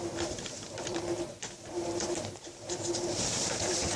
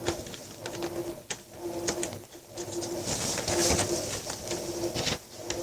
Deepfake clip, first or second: first